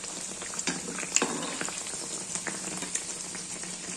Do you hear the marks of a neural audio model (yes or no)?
no